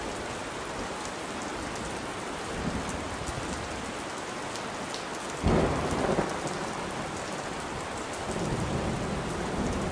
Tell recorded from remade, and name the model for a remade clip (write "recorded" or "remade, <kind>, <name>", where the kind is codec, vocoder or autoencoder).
recorded